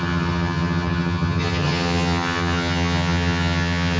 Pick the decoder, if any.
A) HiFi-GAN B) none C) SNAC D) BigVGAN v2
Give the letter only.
A